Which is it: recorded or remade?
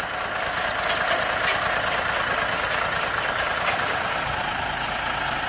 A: recorded